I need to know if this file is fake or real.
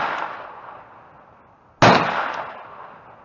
real